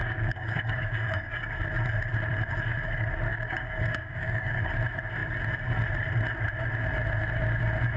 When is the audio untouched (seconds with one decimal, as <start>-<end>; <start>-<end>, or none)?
1.3-3.3; 4.6-8.0